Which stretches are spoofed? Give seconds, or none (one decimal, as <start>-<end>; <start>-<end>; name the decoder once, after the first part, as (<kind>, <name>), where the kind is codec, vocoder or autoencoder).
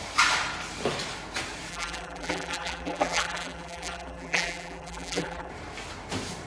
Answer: 1.7-5.5 (vocoder, BigVGAN v2)